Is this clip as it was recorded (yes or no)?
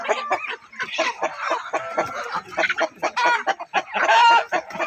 yes